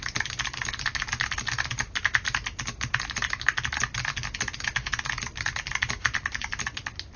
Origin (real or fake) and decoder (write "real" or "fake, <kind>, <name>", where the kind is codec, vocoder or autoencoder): real